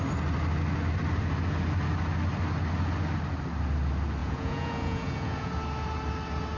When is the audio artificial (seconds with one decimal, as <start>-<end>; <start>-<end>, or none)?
4.2-5.5